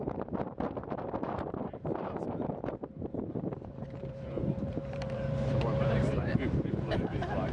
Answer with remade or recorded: remade